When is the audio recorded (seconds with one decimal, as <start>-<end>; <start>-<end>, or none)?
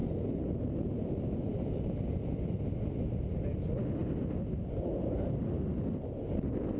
0.0-6.8